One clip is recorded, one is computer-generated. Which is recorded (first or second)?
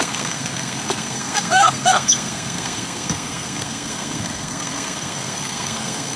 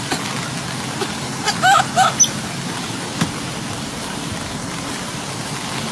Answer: second